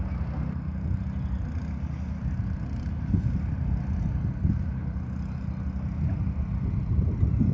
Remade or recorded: recorded